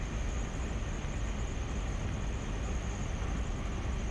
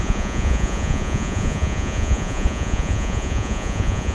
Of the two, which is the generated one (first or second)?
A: second